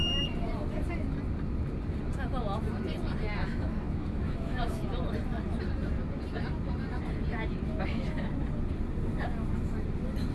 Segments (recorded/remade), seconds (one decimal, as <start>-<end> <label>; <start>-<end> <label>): 0.0-3.5 recorded; 3.5-4.8 remade; 4.8-10.3 recorded